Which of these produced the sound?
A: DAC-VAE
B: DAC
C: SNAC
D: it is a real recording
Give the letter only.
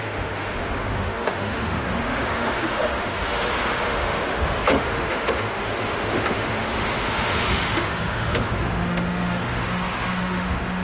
A